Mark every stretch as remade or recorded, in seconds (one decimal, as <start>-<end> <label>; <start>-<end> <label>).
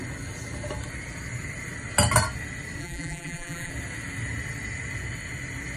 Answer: 0.0-2.8 recorded; 2.8-3.7 remade; 3.7-5.8 recorded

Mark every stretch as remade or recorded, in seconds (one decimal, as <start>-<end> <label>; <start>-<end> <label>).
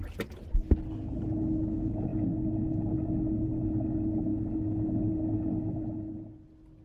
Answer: 0.0-6.8 recorded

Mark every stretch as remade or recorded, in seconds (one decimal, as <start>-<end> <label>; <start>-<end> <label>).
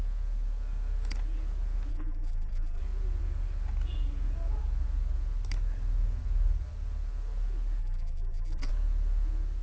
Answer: 0.0-1.9 recorded; 1.9-2.8 remade; 2.8-7.8 recorded; 7.8-8.7 remade; 8.7-9.6 recorded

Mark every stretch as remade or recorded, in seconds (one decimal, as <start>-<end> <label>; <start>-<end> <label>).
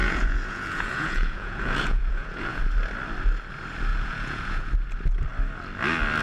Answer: 0.0-2.6 remade; 2.6-3.9 recorded; 3.9-4.7 remade; 4.7-6.2 recorded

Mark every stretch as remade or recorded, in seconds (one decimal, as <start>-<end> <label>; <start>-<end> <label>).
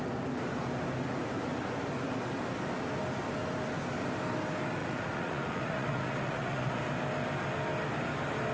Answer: 0.0-4.8 recorded; 4.8-6.8 remade; 6.8-8.5 recorded